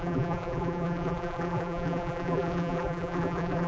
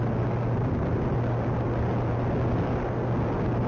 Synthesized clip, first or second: first